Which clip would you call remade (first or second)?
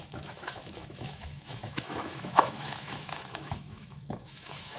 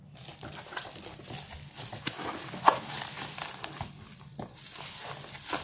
first